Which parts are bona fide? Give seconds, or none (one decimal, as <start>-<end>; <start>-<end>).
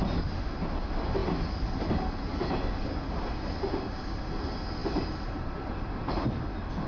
0.0-4.8; 6.1-6.9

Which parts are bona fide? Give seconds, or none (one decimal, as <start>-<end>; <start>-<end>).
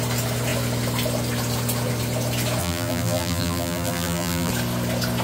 0.0-2.6; 4.5-5.2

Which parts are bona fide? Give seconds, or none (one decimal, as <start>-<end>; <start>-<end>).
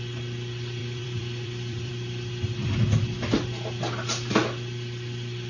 0.0-0.8; 1.9-5.5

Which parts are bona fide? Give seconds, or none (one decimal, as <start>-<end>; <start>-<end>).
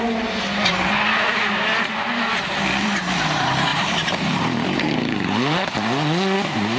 0.0-1.2; 1.9-3.7; 5.7-6.8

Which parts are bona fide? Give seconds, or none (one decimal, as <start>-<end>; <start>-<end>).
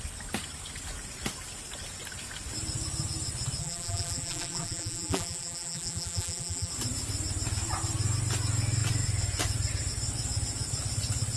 0.0-3.6; 6.7-11.4